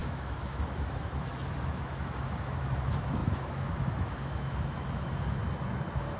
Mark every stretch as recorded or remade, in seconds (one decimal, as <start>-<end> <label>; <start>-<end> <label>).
0.0-5.4 remade; 5.4-6.2 recorded